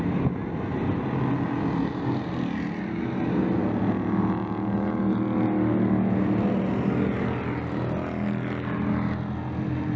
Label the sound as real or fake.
real